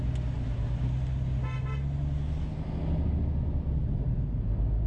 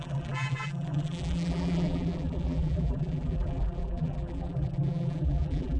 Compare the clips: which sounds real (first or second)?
first